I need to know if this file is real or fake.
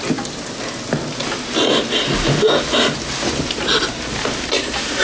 real